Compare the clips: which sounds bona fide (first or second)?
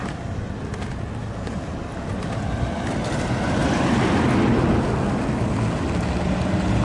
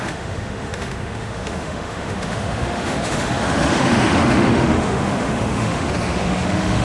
first